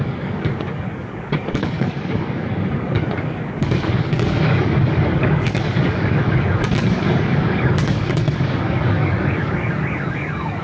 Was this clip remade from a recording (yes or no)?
yes